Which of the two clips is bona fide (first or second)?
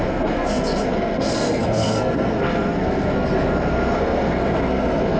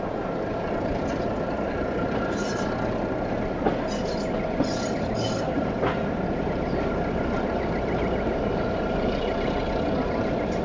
second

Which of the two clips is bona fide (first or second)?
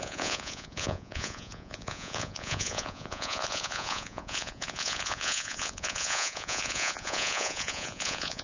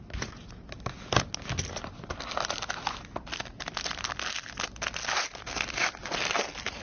second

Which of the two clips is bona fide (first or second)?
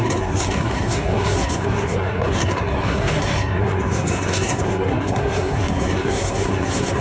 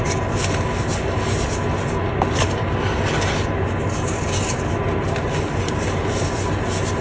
second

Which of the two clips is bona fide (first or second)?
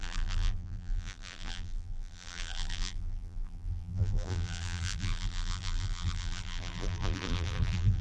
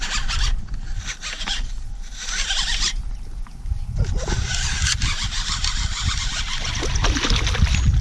second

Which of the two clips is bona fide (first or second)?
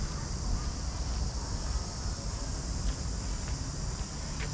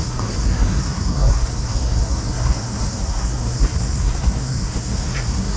first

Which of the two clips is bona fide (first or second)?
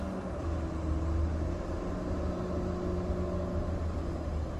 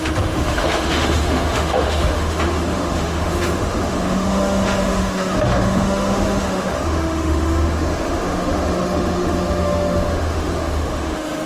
first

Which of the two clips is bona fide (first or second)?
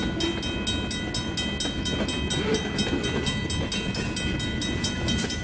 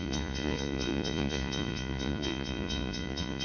first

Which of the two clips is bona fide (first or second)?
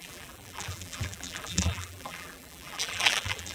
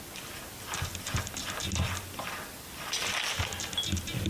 second